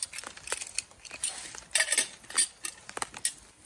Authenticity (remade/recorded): recorded